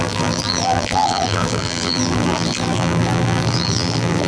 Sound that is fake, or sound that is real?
fake